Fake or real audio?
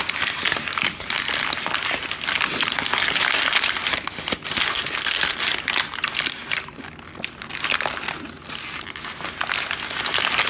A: real